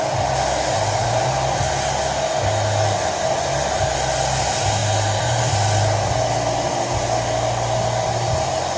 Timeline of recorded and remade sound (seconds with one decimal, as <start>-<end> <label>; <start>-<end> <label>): 0.0-8.8 recorded